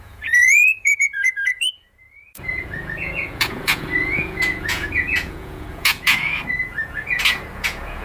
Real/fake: fake